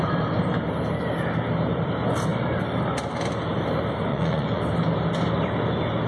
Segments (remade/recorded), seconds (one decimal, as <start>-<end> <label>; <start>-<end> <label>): 0.0-4.1 recorded; 4.1-4.6 remade; 4.6-6.1 recorded